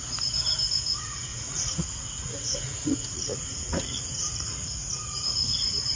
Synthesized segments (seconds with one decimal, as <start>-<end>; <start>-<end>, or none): 1.3-4.9